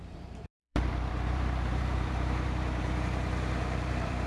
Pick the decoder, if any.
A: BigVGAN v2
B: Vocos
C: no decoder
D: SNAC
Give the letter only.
A